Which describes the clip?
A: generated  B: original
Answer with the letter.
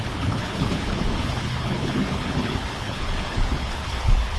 A